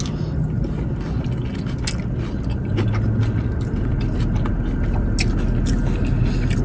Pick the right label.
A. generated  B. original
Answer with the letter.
B